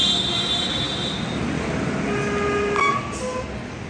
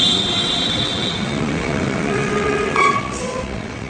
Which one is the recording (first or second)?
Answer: first